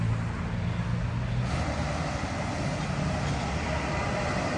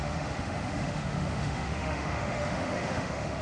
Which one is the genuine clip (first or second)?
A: first